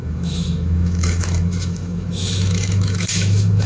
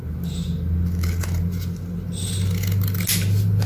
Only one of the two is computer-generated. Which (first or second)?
first